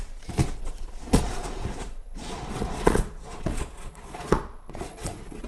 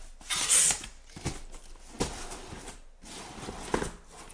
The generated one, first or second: first